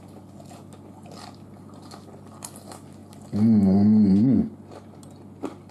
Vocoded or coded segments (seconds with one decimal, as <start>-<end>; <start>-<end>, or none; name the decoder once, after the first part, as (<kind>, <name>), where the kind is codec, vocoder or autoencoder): none